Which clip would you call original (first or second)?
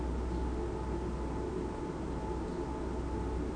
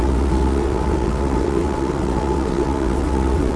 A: first